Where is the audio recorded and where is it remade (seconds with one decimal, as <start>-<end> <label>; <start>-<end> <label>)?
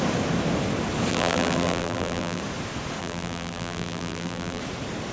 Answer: 0.0-1.1 recorded; 1.1-2.4 remade; 2.4-3.0 recorded; 3.0-4.6 remade; 4.6-5.1 recorded